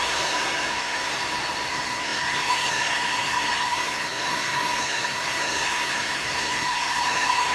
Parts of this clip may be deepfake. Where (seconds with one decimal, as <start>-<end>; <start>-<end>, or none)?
0.0-1.1; 1.7-7.5

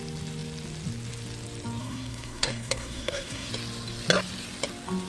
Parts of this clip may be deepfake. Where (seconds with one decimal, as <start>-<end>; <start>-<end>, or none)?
1.8-3.5

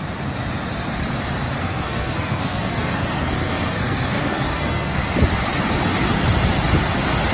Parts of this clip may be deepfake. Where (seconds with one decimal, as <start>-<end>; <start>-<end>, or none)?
1.6-5.0

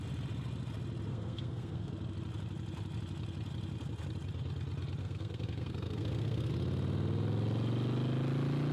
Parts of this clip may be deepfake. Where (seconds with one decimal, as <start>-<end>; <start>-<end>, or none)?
1.1-1.9; 5.0-6.5

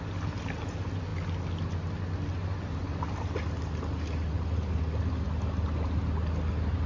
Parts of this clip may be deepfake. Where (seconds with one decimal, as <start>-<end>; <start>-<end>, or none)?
none

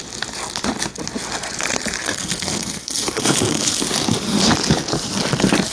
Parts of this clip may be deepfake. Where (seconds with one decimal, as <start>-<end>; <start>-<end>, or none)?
2.0-3.8

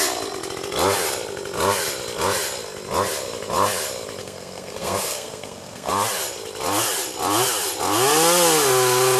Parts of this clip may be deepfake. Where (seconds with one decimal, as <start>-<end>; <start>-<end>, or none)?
4.2-5.9

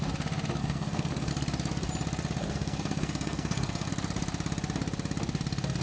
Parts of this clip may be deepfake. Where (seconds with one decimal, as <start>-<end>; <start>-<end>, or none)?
0.6-1.3; 2.4-3.9